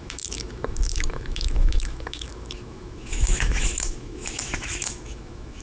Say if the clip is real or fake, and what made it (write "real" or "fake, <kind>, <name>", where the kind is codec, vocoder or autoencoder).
fake, autoencoder, DAC-VAE